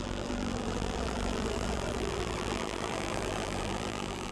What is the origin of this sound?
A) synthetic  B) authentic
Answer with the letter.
A